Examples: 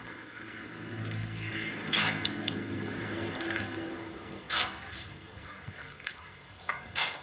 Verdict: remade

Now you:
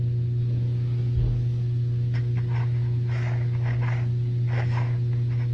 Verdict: recorded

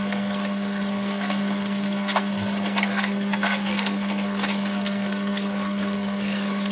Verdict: remade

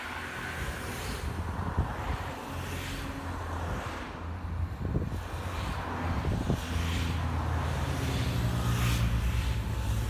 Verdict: recorded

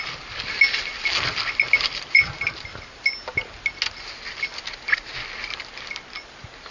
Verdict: recorded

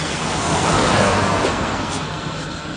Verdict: remade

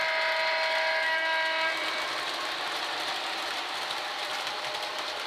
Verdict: recorded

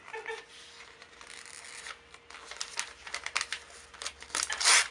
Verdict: recorded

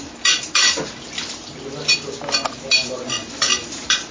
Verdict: recorded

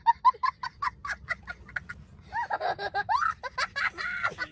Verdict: recorded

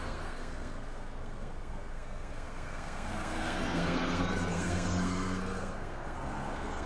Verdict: remade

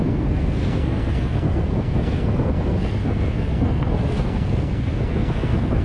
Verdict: remade